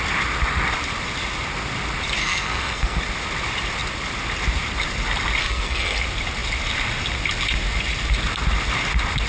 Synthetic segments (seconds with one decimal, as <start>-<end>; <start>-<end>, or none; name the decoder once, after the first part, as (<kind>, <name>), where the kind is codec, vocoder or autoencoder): 2.2-3.0 (codec, SNAC); 5.4-6.0